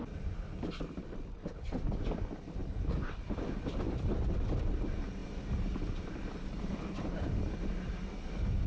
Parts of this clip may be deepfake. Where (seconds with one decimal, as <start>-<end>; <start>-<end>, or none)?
none